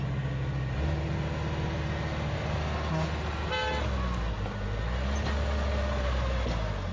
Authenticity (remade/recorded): recorded